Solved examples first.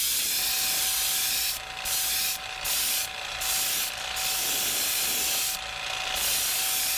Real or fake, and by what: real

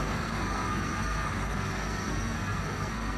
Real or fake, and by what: fake, codec, SNAC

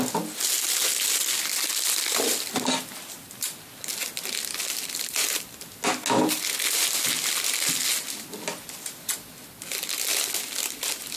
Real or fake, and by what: real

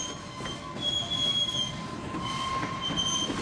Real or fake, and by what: real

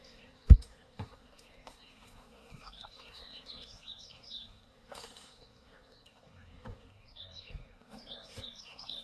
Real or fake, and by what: fake, codec, SNAC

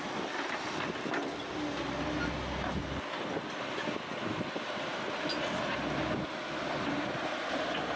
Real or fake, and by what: real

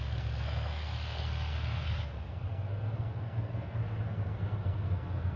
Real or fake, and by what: fake, codec, SNAC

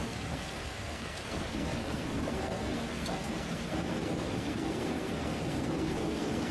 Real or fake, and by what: fake, codec, SNAC